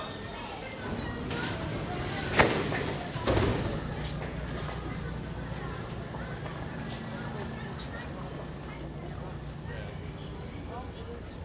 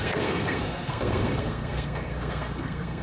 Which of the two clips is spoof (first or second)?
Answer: second